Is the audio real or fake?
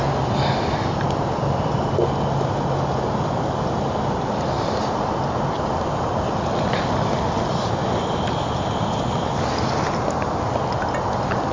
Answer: real